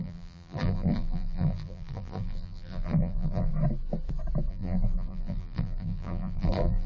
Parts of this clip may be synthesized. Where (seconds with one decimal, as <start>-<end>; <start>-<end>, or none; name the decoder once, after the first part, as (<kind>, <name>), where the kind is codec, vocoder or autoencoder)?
0.0-3.5 (vocoder, BigVGAN v2); 4.5-6.9